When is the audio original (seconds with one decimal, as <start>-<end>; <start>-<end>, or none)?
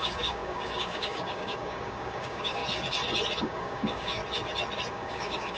2.6-3.4; 4.2-4.9